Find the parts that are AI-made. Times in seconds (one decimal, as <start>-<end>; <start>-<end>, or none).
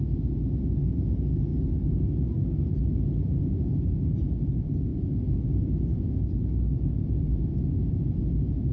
none